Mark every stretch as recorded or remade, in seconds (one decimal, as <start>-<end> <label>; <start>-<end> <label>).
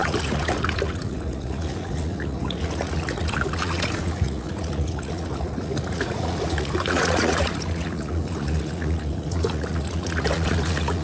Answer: 0.0-11.0 remade